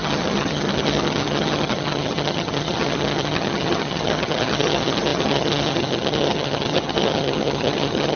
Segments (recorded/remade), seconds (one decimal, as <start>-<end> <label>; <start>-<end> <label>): 0.0-8.2 remade